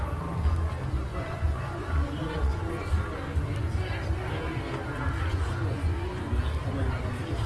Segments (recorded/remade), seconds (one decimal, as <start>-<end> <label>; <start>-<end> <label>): 0.0-1.1 recorded; 1.1-2.9 remade; 2.9-5.3 recorded; 5.3-6.3 remade; 6.3-7.5 recorded